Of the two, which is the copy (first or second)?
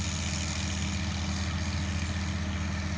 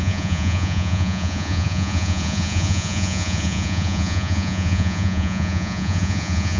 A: second